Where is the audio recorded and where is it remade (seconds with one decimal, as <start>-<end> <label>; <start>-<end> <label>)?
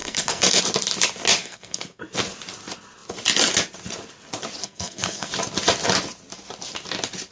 0.0-0.6 remade; 0.6-1.4 recorded; 1.4-2.0 remade; 2.0-4.6 recorded; 4.6-5.3 remade; 5.3-7.3 recorded